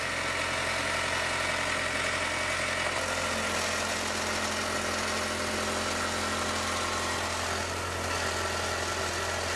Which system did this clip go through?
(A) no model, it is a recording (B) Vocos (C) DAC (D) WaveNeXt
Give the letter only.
A